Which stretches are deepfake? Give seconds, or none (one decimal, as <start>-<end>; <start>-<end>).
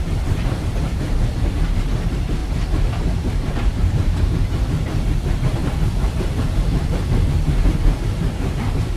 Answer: 0.0-5.6; 6.1-9.0